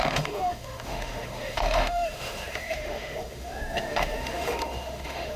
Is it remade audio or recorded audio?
remade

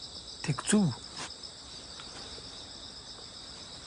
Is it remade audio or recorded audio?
recorded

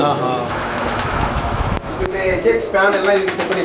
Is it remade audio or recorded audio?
remade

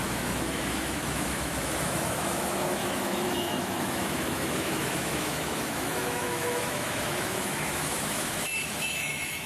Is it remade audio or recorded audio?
remade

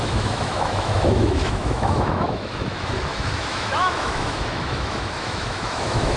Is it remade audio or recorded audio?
remade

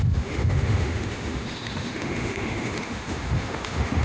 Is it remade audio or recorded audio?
remade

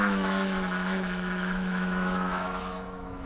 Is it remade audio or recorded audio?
remade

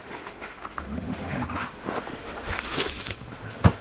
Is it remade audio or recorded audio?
remade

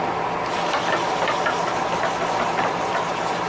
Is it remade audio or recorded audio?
recorded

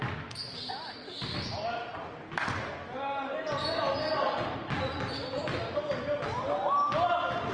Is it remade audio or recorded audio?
recorded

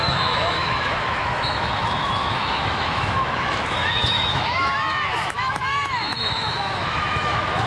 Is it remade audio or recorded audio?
remade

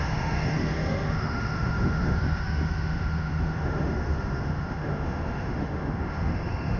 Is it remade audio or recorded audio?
remade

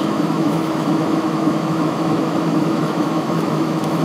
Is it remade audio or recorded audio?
remade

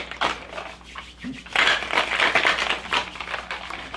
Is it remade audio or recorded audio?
recorded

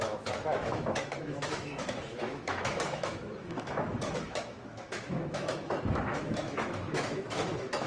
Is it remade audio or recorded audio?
remade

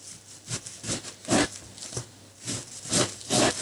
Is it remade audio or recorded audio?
recorded